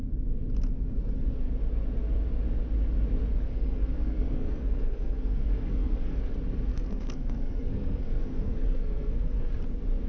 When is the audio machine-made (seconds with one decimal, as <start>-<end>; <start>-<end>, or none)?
3.4-6.2; 6.7-9.5